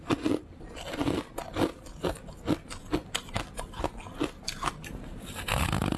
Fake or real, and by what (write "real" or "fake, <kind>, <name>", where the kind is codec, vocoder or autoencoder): real